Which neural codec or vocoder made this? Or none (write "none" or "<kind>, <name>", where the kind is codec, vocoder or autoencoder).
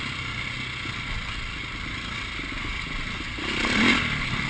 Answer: none